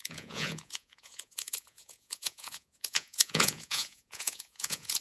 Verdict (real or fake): fake